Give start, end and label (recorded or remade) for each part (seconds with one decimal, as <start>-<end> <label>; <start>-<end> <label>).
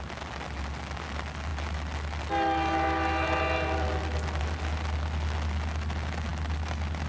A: 0.0-7.1 recorded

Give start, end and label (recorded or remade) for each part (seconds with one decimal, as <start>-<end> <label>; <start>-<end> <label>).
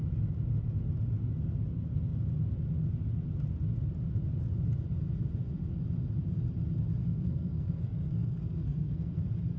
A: 0.0-7.0 recorded; 7.0-9.2 remade; 9.2-9.6 recorded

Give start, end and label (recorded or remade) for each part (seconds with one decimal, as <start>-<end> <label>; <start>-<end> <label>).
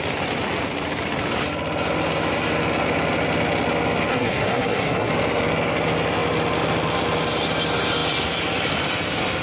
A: 0.0-4.1 recorded; 4.1-5.1 remade; 5.1-9.4 recorded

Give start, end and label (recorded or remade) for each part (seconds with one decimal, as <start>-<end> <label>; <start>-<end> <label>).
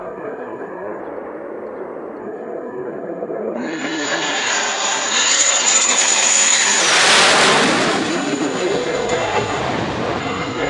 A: 0.0-1.0 remade; 1.0-2.2 recorded; 2.2-6.8 remade; 6.8-8.1 recorded; 8.1-9.6 remade; 9.6-10.2 recorded; 10.2-10.7 remade